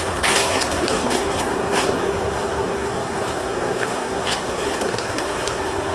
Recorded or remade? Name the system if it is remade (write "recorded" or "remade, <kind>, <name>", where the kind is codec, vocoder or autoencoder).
remade, codec, SNAC